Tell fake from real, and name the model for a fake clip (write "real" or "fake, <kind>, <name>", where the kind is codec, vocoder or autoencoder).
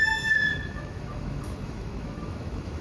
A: fake, autoencoder, DAC-VAE